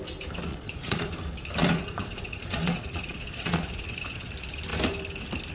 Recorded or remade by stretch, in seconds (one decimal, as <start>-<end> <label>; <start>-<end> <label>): 0.0-0.5 recorded; 0.5-1.1 remade; 1.1-1.6 recorded; 1.6-4.3 remade; 4.3-5.5 recorded